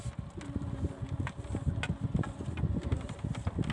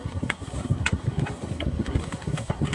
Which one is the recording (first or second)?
first